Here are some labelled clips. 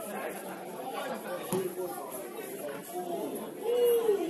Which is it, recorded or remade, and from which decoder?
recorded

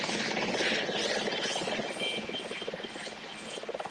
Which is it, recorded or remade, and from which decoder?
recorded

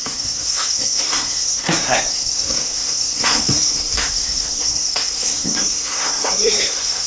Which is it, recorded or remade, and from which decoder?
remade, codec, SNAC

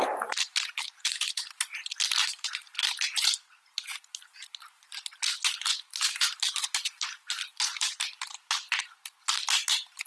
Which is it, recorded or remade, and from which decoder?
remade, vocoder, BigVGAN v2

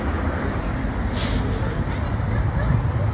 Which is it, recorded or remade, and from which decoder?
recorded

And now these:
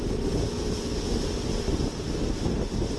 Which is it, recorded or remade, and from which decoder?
recorded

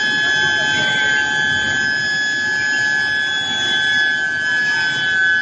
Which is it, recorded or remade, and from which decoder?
recorded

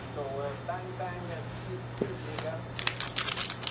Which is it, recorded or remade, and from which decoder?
recorded